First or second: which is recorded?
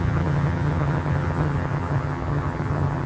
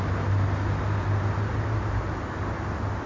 second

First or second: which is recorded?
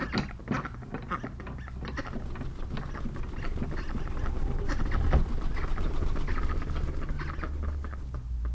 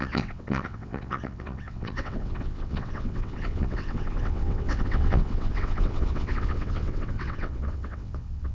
first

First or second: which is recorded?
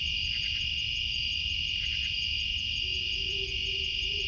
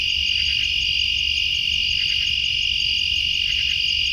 second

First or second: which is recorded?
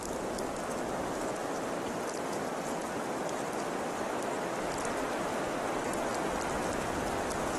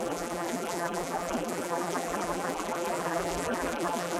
first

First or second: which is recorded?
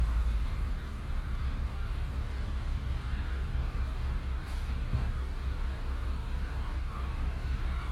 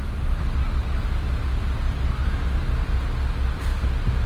second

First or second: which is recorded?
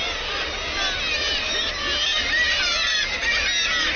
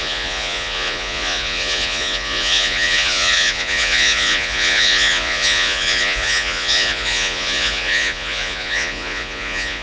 first